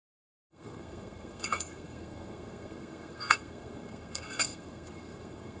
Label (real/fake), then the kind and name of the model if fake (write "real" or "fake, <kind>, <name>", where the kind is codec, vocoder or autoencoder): fake, codec, SNAC